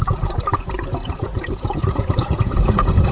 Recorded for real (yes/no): no